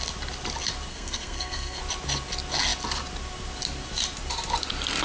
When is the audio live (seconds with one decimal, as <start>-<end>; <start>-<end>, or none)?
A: 0.0-0.9; 1.8-5.0